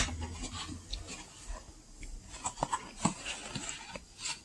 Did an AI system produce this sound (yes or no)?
no